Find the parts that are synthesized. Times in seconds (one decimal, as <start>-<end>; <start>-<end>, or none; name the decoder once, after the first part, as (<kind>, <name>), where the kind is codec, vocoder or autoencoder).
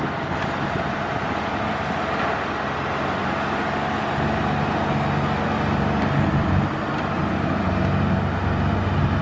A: none